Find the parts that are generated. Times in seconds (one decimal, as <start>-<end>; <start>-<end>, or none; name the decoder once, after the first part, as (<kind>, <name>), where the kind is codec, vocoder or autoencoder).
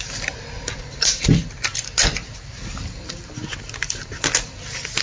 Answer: none